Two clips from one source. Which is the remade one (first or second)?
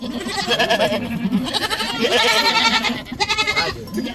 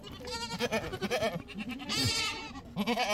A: first